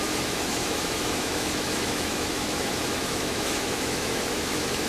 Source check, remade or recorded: remade